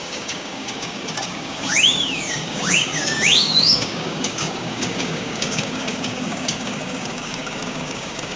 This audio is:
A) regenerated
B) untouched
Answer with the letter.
A